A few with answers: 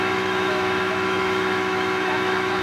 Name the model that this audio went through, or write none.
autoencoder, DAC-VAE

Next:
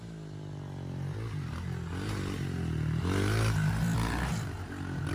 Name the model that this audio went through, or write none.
none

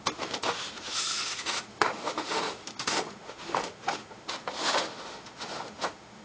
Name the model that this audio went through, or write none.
autoencoder, DAC-VAE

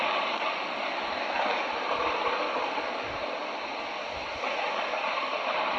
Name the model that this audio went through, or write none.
none